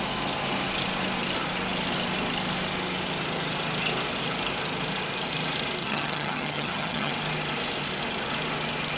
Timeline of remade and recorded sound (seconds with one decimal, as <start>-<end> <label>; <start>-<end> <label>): 0.0-5.8 recorded; 5.8-7.1 remade; 7.1-9.0 recorded